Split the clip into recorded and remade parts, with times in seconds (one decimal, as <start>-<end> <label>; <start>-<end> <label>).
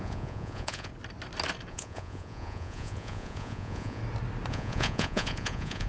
0.0-0.9 remade; 0.9-1.7 recorded; 1.7-4.0 remade; 4.0-4.5 recorded; 4.5-5.9 remade